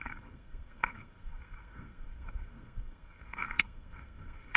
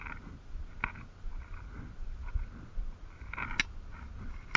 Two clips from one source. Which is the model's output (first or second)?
first